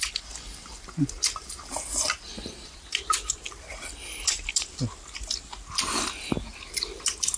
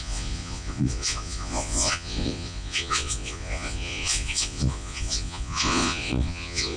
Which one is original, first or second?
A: first